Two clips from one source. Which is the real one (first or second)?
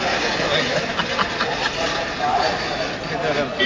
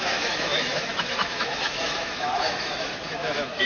first